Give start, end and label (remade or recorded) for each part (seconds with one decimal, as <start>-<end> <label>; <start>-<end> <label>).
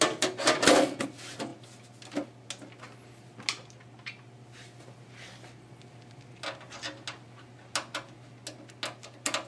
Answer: 0.0-9.5 recorded